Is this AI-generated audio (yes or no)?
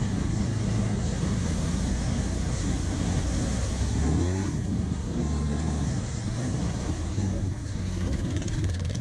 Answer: yes